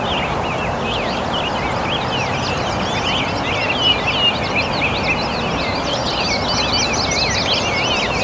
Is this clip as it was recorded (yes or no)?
yes